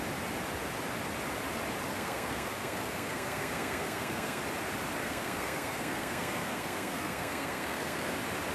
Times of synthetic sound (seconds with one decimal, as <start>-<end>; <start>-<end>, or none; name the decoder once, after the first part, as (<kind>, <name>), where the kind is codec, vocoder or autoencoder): 1.9-4.4 (codec, SNAC); 5.0-8.1